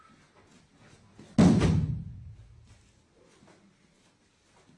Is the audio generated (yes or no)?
no